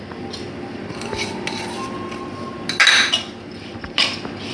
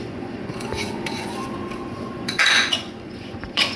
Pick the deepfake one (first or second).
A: second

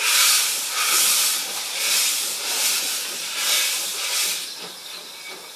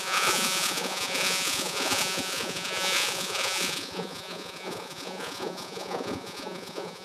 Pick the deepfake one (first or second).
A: second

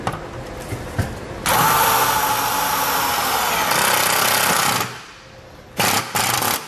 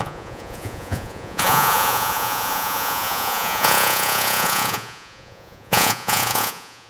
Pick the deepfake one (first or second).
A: second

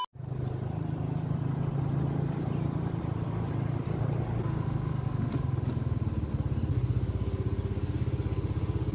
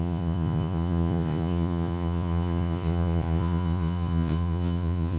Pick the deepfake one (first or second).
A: second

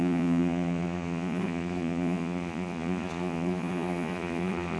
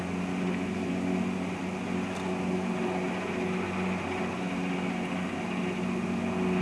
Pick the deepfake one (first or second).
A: first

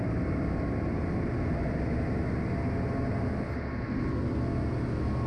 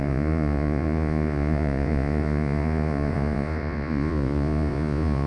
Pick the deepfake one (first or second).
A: second